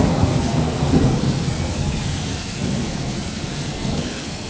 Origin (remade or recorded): remade